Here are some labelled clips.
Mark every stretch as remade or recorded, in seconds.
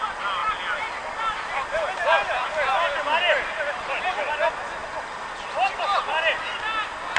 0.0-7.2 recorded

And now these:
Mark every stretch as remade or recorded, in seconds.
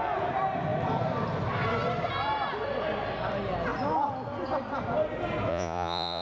0.0-5.5 recorded; 5.5-6.2 remade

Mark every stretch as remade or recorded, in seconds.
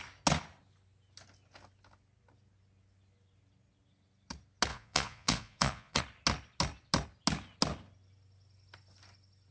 0.0-4.7 recorded; 4.7-6.0 remade; 6.0-9.5 recorded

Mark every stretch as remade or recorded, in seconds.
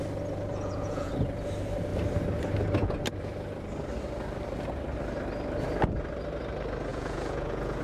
0.0-0.5 recorded; 0.5-1.1 remade; 1.1-6.9 recorded; 6.9-7.8 remade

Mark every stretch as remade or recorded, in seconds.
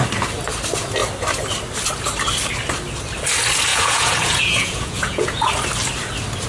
0.0-3.7 recorded; 3.7-5.5 remade; 5.5-6.5 recorded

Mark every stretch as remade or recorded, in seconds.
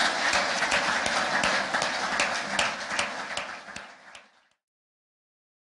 0.0-0.8 remade; 0.8-5.7 recorded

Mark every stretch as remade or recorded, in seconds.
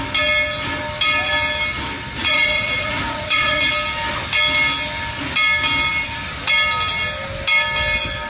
0.0-2.2 recorded; 2.2-3.7 remade; 3.7-8.3 recorded